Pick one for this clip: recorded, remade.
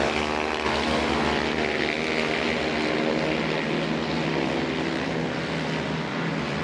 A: recorded